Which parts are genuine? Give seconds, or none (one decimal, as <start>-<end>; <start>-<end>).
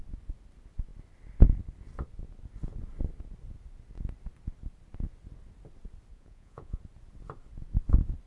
0.0-6.1; 6.8-8.3